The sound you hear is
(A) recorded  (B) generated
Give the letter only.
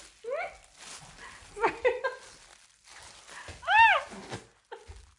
A